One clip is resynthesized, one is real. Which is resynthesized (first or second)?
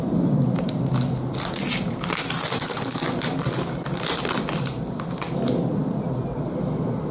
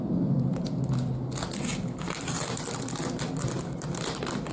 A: first